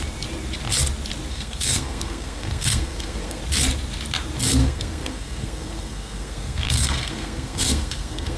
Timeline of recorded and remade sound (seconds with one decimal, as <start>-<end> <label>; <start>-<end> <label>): 0.0-1.3 recorded; 1.3-3.4 remade; 3.4-4.6 recorded; 4.6-8.4 remade